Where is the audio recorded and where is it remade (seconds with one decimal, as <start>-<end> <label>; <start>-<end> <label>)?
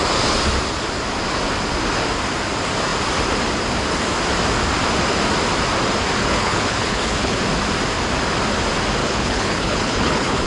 0.0-6.2 recorded; 6.2-7.4 remade; 7.4-9.0 recorded; 9.0-10.5 remade